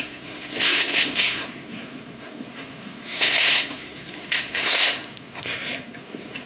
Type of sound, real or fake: fake